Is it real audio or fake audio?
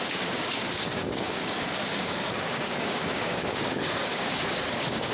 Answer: fake